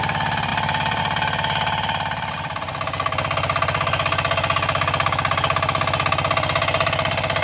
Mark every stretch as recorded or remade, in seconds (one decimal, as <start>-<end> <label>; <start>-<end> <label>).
0.0-7.4 recorded